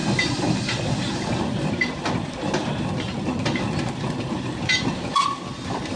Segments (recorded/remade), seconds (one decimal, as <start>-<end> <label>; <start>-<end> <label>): 0.0-6.0 remade